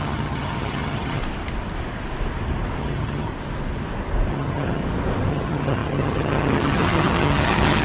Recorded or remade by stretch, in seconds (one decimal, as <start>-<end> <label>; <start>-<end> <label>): 0.0-1.2 remade; 1.2-2.8 recorded; 2.8-3.3 remade; 3.3-4.3 recorded; 4.3-4.8 remade; 4.8-5.3 recorded; 5.3-7.8 remade